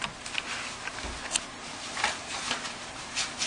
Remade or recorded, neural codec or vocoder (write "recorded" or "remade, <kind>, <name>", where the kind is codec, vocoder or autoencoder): recorded